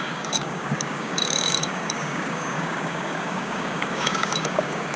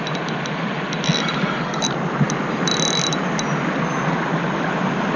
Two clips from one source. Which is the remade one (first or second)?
first